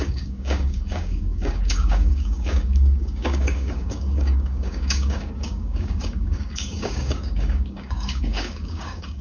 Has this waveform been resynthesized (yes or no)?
yes